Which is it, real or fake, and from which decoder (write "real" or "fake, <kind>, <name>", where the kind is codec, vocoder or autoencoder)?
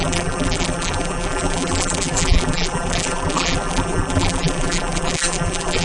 fake, vocoder, BigVGAN v2